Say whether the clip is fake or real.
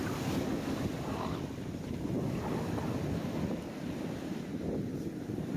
real